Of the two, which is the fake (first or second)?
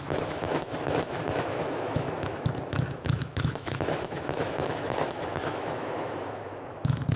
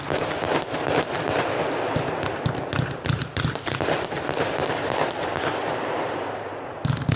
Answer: first